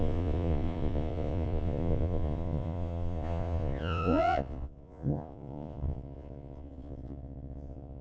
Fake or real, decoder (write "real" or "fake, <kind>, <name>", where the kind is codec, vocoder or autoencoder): fake, vocoder, Vocos